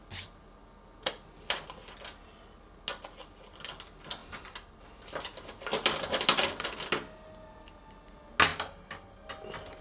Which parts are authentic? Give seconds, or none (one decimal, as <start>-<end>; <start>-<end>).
0.0-4.2; 4.8-9.8